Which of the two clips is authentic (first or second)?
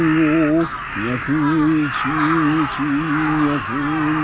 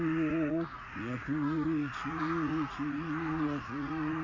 first